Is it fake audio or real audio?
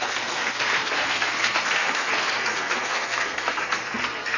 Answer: fake